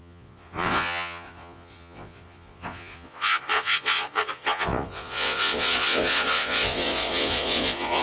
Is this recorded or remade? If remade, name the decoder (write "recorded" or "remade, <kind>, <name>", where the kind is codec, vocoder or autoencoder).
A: remade, vocoder, Vocos